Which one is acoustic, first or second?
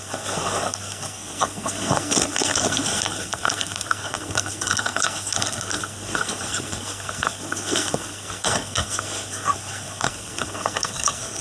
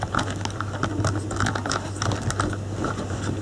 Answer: second